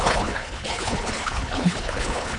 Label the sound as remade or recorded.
remade